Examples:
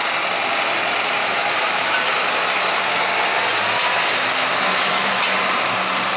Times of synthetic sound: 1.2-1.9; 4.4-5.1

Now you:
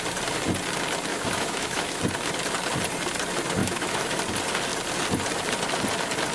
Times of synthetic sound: 1.1-2.0; 3.6-4.2